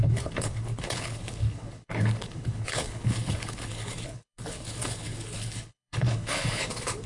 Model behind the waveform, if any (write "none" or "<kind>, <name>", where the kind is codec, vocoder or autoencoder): codec, HILCodec